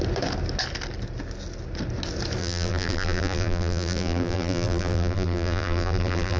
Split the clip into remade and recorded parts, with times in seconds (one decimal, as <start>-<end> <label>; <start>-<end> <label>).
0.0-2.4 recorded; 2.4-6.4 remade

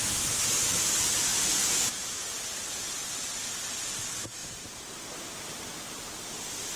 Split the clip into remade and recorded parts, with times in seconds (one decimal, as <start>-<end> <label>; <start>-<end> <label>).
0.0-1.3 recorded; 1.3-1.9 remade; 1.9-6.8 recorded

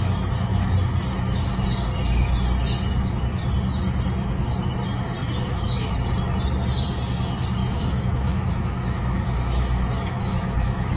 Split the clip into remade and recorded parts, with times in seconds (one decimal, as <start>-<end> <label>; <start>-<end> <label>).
0.0-5.2 recorded; 5.2-5.9 remade; 5.9-7.6 recorded; 7.6-11.0 remade

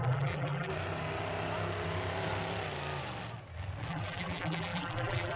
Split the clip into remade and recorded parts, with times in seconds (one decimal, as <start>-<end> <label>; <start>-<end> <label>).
0.0-0.7 remade; 0.7-3.9 recorded; 3.9-5.4 remade

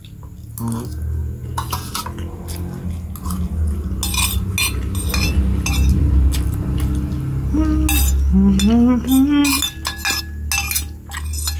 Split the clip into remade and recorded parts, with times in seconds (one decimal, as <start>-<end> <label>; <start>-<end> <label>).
0.0-1.2 recorded; 1.2-1.9 remade; 1.9-11.6 recorded